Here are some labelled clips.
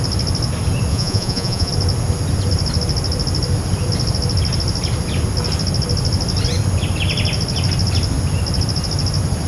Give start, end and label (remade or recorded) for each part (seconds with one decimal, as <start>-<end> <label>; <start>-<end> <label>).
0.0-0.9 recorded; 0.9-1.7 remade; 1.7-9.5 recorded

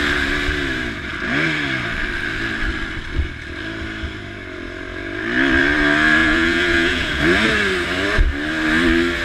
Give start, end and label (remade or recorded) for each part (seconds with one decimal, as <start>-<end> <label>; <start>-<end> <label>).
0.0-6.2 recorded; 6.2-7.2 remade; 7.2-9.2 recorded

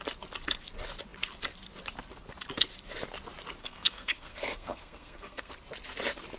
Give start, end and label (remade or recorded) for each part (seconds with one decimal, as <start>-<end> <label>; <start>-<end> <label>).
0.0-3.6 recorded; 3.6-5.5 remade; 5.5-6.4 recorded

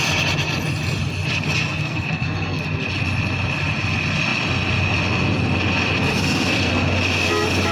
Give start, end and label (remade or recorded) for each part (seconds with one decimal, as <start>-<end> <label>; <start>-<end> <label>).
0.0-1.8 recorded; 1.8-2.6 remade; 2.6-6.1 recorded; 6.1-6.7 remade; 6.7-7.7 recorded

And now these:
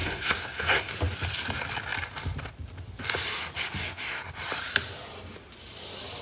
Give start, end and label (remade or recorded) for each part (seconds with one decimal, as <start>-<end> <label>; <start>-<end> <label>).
0.0-0.9 remade; 0.9-3.8 recorded; 3.8-4.3 remade; 4.3-6.2 recorded